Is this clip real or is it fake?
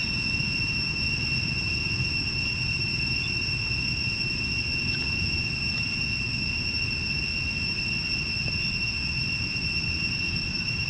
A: real